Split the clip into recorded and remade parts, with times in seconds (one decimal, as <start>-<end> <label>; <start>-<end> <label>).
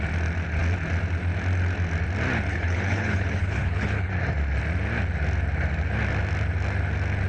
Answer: 0.0-2.5 recorded; 2.5-4.1 remade; 4.1-7.3 recorded